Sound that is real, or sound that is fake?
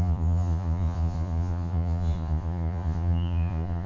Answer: fake